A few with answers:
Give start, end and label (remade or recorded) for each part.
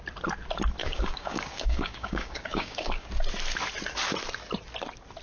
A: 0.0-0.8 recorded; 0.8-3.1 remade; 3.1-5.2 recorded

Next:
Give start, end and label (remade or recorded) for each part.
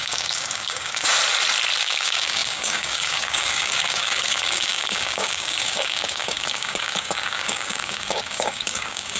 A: 0.0-1.1 remade; 1.1-1.8 recorded; 1.8-9.2 remade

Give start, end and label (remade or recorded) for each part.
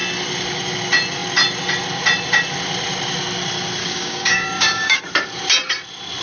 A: 0.0-3.8 recorded; 3.8-5.0 remade; 5.0-6.2 recorded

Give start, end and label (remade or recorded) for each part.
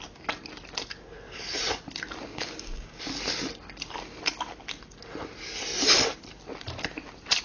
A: 0.0-2.3 recorded; 2.3-3.0 remade; 3.0-7.4 recorded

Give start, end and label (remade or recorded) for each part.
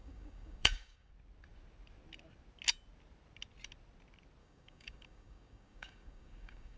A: 0.0-1.1 remade; 1.1-4.4 recorded; 4.4-6.8 remade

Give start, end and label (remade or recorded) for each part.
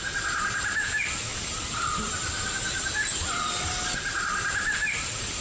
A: 0.0-5.4 recorded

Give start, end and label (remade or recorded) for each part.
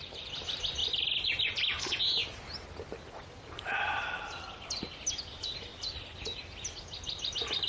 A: 0.0-7.7 recorded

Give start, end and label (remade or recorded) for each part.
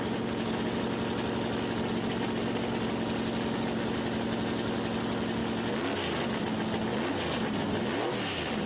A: 0.0-8.7 recorded